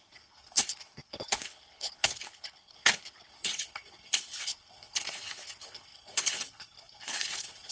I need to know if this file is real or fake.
fake